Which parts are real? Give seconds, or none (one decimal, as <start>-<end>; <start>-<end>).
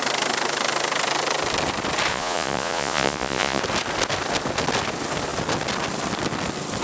0.0-2.1; 3.6-6.8